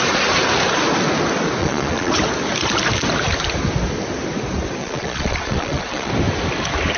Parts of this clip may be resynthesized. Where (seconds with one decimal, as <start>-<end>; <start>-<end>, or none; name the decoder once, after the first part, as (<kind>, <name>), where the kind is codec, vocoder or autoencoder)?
1.6-2.1 (vocoder, Vocos); 4.8-6.1